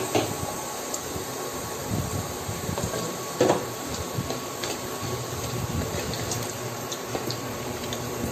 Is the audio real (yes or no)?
no